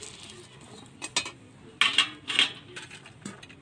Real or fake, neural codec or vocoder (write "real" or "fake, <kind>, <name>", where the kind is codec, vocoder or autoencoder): real